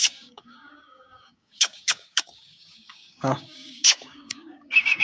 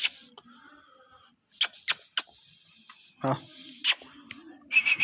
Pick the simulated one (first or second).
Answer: first